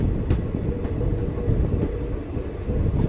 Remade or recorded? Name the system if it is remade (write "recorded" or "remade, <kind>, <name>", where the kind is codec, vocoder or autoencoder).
recorded